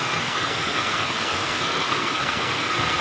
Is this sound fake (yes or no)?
yes